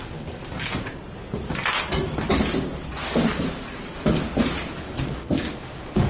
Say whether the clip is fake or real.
real